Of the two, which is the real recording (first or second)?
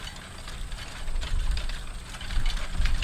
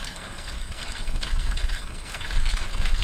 first